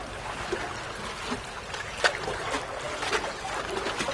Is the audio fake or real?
real